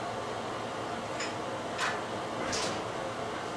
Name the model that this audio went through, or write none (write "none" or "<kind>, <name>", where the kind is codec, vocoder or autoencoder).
none